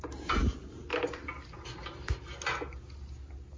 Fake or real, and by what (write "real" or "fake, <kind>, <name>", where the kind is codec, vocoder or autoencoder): real